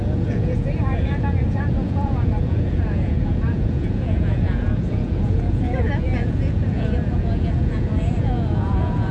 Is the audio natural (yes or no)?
no